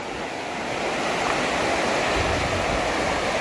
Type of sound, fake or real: real